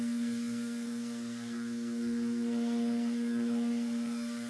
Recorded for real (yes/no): no